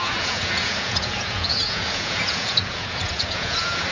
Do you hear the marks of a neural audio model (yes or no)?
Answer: yes